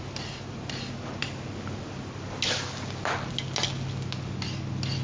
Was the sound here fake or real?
real